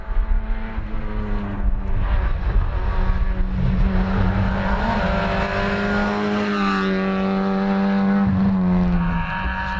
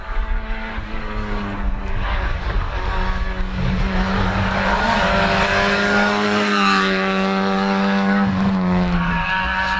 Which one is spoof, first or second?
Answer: second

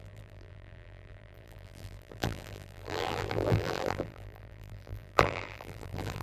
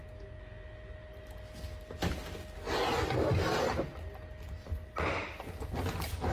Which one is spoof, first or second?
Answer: first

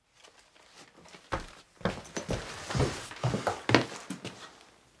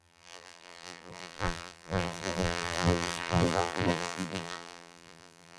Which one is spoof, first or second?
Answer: second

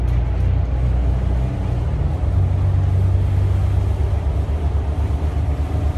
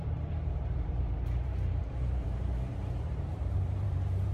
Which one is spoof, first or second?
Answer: second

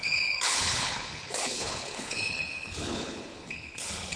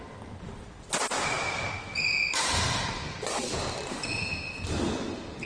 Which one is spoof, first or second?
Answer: first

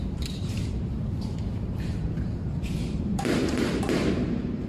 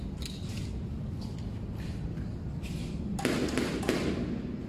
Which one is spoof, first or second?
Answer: first